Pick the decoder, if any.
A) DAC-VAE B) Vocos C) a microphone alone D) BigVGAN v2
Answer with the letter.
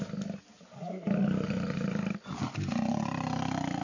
C